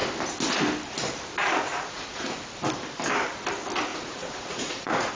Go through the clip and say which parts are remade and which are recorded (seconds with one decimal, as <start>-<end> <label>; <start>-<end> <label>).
0.0-1.4 recorded; 1.4-2.4 remade; 2.4-3.9 recorded; 3.9-5.1 remade

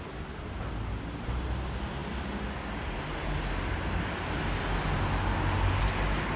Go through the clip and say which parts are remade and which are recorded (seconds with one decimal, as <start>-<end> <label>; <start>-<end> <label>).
0.0-0.9 recorded; 0.9-1.4 remade; 1.4-6.4 recorded

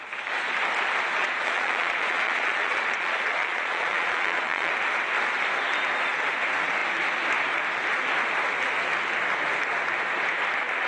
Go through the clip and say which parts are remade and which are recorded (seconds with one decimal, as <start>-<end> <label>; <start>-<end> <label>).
0.0-1.2 recorded; 1.2-4.7 remade; 4.7-10.9 recorded

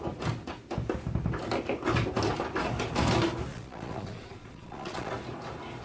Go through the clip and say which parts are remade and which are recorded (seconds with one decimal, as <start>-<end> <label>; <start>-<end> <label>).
0.0-3.5 recorded; 3.5-5.1 remade; 5.1-5.8 recorded

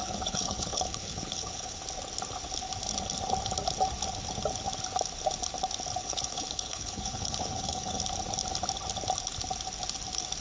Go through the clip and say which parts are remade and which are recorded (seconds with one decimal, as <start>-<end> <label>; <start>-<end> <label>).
0.0-1.8 remade; 1.8-6.0 recorded; 6.0-8.0 remade; 8.0-10.4 recorded

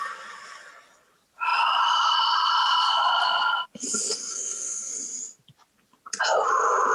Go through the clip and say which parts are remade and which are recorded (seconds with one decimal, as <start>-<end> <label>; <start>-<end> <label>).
0.0-4.3 recorded; 4.3-4.9 remade; 4.9-6.9 recorded

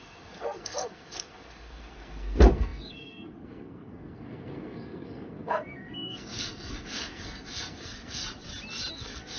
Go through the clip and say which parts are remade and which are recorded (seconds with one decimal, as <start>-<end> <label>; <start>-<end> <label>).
0.0-8.2 remade; 8.2-8.9 recorded; 8.9-9.4 remade